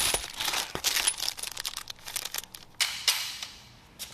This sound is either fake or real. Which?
real